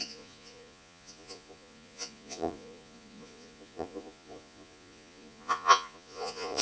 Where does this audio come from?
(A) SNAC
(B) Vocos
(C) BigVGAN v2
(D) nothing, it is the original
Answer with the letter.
B